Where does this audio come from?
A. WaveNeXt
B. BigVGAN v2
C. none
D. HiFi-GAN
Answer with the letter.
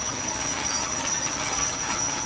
D